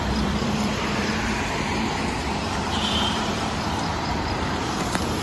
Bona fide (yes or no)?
no